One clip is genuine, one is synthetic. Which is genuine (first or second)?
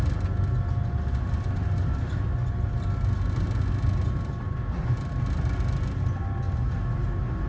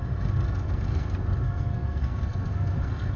first